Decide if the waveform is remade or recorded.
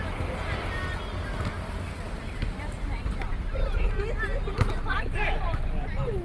recorded